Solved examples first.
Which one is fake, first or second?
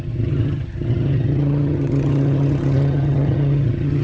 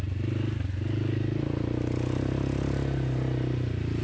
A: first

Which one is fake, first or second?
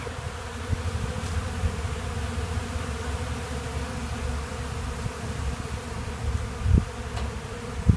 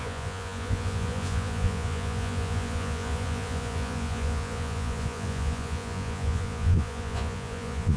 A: second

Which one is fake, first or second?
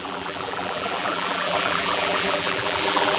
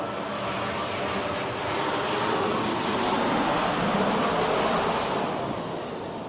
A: first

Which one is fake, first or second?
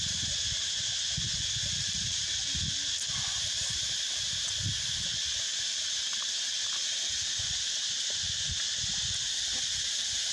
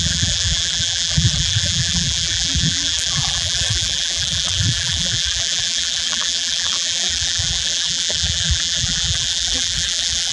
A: second